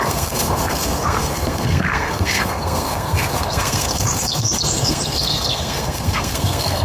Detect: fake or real fake